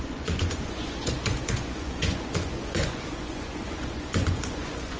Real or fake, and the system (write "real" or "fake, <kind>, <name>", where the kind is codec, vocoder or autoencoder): fake, vocoder, Vocos